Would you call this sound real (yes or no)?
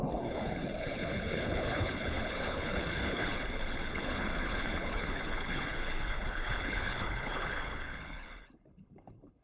no